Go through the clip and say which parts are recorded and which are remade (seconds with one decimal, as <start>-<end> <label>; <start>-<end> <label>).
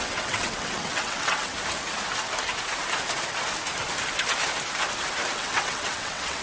0.0-1.5 remade; 1.5-5.3 recorded; 5.3-6.4 remade